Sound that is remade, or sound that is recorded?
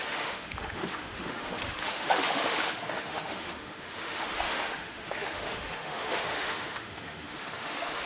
remade